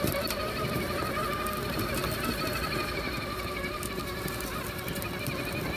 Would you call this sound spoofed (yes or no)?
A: yes